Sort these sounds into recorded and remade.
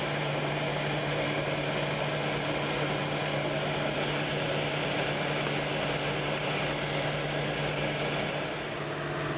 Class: recorded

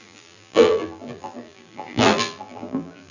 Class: remade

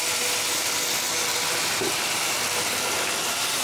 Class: recorded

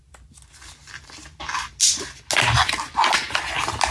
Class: recorded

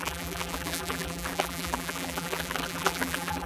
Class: remade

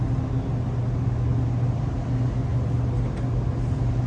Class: recorded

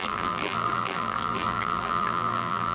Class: remade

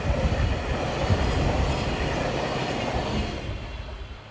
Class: recorded